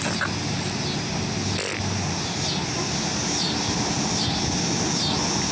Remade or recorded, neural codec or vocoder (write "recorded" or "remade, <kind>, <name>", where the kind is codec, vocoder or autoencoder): recorded